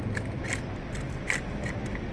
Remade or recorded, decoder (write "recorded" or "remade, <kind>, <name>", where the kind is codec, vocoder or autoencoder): recorded